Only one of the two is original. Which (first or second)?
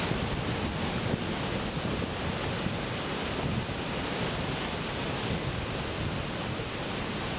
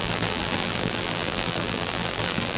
first